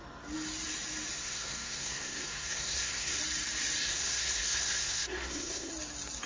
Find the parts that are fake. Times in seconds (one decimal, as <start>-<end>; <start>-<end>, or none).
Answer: 1.2-3.2; 3.9-5.7